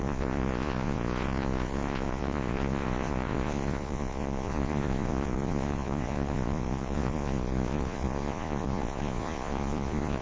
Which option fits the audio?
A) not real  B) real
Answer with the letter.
A